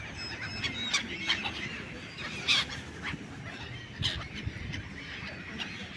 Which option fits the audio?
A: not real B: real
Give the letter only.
B